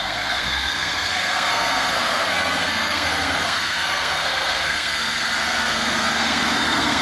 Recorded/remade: remade